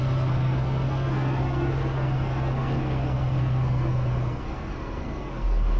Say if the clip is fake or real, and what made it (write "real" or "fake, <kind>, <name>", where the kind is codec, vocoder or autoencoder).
fake, codec, SNAC